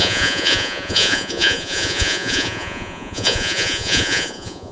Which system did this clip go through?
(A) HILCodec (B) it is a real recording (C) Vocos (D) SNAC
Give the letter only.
C